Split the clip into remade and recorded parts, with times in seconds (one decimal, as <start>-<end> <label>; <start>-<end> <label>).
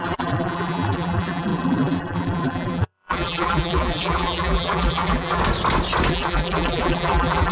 0.0-5.4 remade; 5.4-6.1 recorded; 6.1-7.5 remade